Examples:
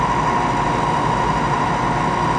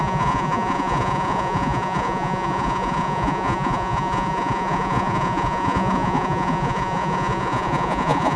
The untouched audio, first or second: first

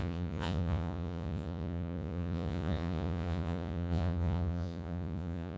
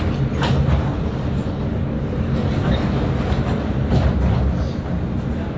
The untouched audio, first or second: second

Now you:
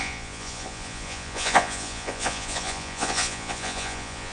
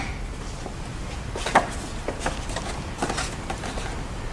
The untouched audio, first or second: second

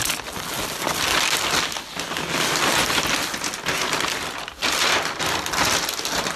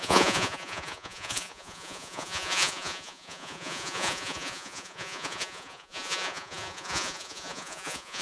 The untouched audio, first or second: first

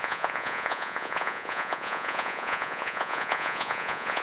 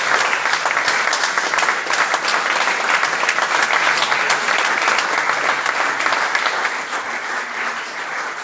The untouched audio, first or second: second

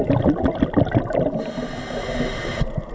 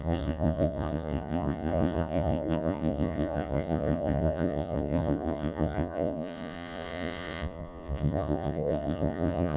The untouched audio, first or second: first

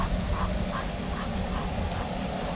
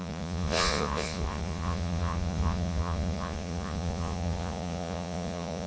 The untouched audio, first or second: first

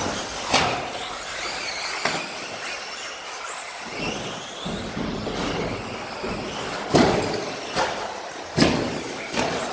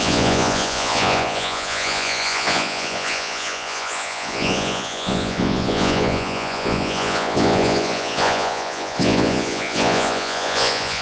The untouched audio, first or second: first